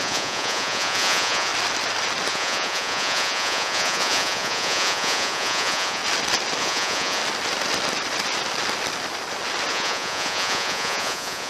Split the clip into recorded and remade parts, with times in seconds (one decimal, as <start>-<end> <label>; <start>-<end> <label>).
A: 0.0-1.5 remade; 1.5-2.3 recorded; 2.3-6.0 remade; 6.0-6.6 recorded; 6.6-7.2 remade; 7.2-9.7 recorded; 9.7-11.5 remade

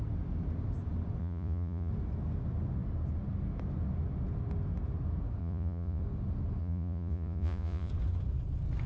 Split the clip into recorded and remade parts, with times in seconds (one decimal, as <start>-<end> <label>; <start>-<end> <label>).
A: 0.0-1.2 recorded; 1.2-1.9 remade; 1.9-5.4 recorded; 5.4-6.0 remade; 6.0-6.6 recorded; 6.6-7.9 remade; 7.9-8.9 recorded